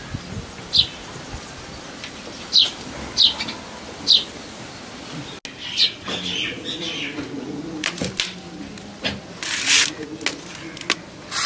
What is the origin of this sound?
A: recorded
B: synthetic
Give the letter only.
A